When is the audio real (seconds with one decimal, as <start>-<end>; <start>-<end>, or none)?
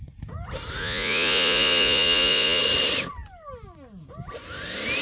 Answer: 0.0-0.8; 2.6-5.0